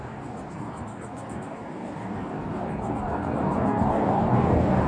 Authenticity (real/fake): fake